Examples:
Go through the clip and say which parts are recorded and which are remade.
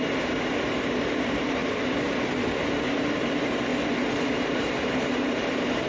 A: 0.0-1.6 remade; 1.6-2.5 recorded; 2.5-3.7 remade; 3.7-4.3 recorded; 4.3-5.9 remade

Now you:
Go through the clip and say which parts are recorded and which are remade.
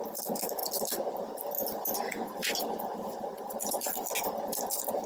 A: 0.0-5.1 recorded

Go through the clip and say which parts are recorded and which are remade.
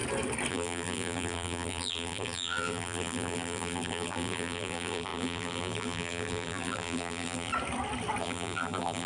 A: 0.0-0.5 recorded; 0.5-7.5 remade; 7.5-8.2 recorded; 8.2-9.1 remade